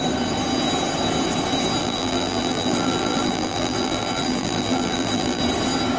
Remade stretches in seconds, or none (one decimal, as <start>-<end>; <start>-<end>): 1.8-5.4

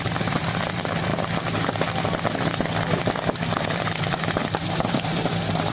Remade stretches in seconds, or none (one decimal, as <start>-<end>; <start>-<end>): 0.0-1.1; 3.6-5.7

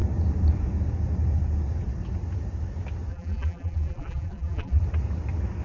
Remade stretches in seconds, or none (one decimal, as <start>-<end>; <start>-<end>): 3.1-4.8

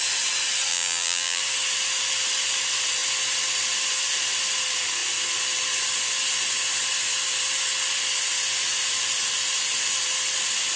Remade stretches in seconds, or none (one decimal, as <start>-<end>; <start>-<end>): 0.7-1.4

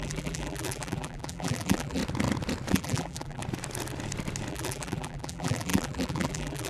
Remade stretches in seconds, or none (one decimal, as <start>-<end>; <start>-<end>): 0.0-2.0; 2.7-3.4; 4.5-6.7

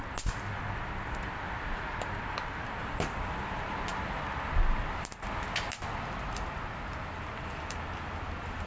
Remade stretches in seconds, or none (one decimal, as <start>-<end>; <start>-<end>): none

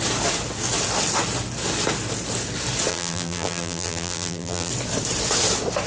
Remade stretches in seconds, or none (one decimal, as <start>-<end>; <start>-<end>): 2.9-4.7

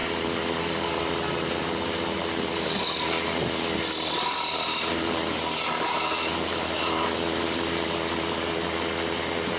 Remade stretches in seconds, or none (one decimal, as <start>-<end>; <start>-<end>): none